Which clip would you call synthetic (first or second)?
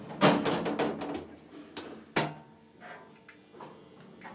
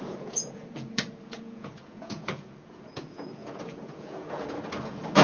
second